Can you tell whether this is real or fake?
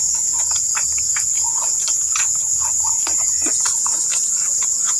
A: fake